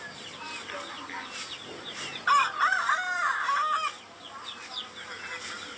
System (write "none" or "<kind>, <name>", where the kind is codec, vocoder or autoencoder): none